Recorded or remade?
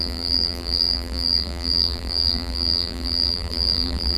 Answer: remade